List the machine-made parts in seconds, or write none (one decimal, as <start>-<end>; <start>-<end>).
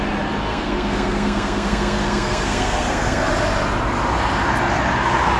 0.5-3.3